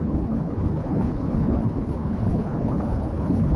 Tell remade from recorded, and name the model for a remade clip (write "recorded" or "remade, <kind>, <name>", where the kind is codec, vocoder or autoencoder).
remade, codec, HILCodec